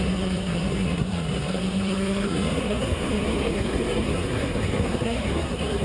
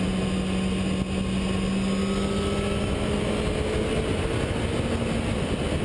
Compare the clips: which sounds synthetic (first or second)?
first